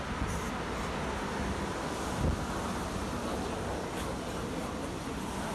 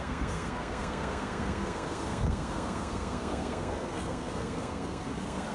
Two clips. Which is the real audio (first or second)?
first